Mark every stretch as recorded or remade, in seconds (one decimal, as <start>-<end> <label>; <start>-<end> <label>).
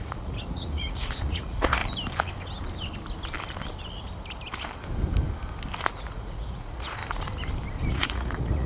0.0-1.8 remade; 1.8-5.9 recorded; 5.9-7.0 remade; 7.0-7.9 recorded; 7.9-8.7 remade